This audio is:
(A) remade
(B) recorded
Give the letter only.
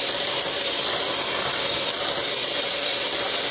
B